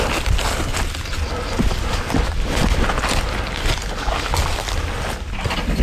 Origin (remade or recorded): recorded